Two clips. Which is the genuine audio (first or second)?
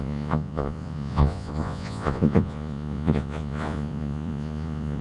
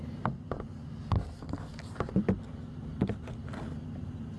second